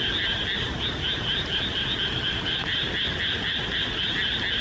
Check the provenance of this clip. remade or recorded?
recorded